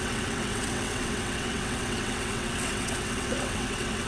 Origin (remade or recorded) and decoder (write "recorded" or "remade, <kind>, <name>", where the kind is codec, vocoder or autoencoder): remade, vocoder, WaveNeXt